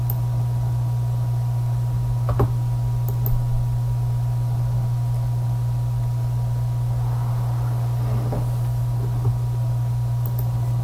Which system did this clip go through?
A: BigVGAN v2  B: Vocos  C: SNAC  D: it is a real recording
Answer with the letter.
D